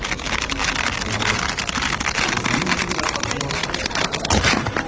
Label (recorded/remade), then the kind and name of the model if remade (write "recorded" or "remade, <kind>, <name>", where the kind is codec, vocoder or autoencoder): recorded